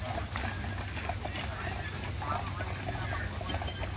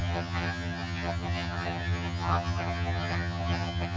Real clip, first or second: first